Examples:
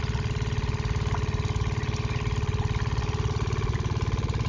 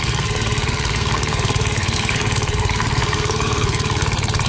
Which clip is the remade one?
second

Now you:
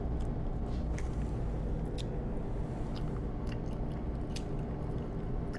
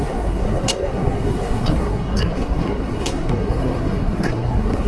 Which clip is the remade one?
second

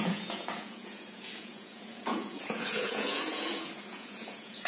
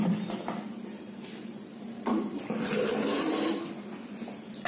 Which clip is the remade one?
first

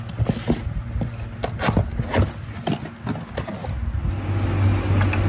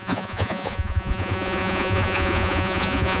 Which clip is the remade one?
second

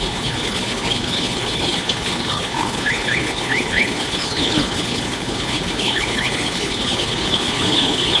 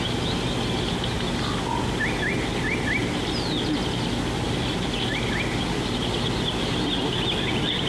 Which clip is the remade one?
first